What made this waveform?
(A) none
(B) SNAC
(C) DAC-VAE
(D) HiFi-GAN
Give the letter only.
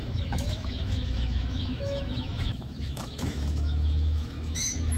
C